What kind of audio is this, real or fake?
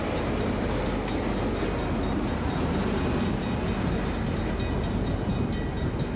real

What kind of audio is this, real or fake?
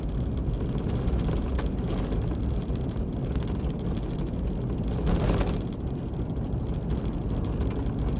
real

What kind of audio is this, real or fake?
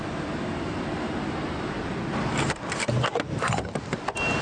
real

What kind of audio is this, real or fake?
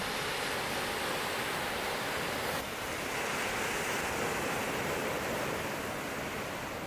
real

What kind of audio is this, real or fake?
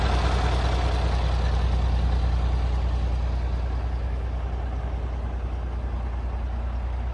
real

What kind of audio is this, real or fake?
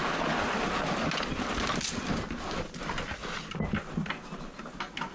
real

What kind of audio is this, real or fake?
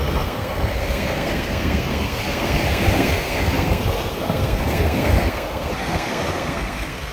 fake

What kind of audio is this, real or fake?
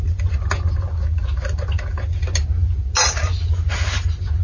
real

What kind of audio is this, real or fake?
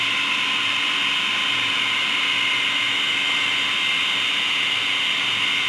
real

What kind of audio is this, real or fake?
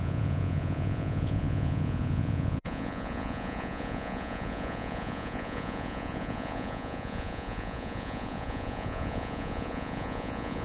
fake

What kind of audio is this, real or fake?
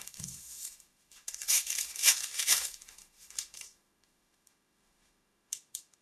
fake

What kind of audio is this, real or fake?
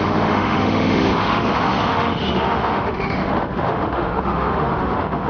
fake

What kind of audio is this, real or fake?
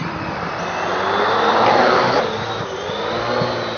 real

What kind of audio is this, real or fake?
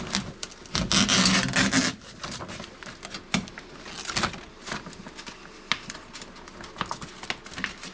real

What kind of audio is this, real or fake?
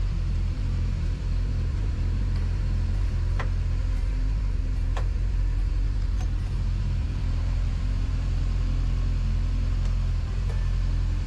fake